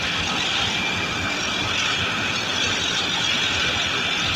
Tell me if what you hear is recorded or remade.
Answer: recorded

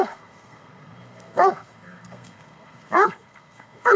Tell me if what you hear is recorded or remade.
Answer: remade